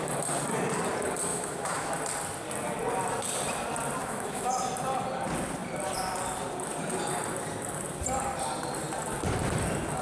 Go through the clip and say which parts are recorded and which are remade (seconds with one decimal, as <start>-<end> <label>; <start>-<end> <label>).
0.0-1.3 recorded; 1.3-1.9 remade; 1.9-4.0 recorded; 4.0-4.5 remade; 4.5-10.0 recorded